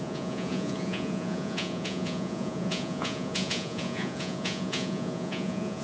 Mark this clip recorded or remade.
remade